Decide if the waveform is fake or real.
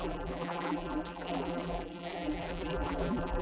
fake